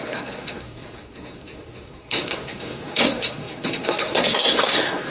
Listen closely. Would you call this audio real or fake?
fake